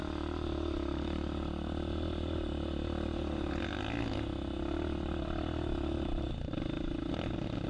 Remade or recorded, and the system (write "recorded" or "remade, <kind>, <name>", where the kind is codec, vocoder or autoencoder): recorded